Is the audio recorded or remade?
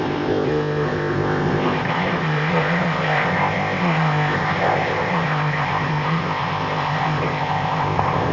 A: remade